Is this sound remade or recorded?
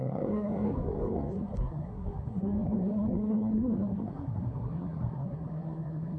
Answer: remade